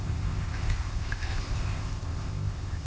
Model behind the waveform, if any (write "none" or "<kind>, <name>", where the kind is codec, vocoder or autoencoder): codec, ZipCodec